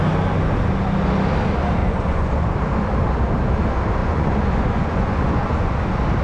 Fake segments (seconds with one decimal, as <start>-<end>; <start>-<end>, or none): 1.8-2.6; 4.0-5.7